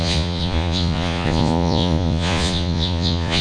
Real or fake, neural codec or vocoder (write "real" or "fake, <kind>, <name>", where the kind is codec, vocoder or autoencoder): fake, vocoder, Vocos